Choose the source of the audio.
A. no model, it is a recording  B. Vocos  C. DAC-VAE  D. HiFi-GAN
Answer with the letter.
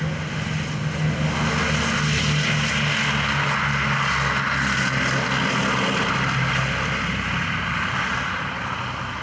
A